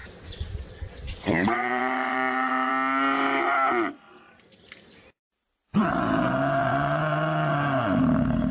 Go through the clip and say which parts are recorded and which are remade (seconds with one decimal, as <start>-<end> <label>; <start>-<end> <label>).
0.0-2.7 remade; 2.7-6.6 recorded; 6.6-7.5 remade; 7.5-8.5 recorded